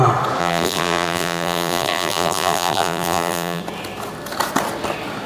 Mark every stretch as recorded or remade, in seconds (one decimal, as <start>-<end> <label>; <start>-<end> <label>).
0.0-0.4 recorded; 0.4-3.6 remade; 3.6-5.3 recorded